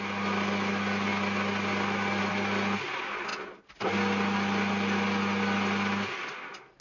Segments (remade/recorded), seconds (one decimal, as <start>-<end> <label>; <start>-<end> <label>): 0.0-6.8 recorded